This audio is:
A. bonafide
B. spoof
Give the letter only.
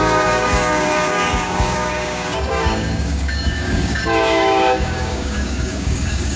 B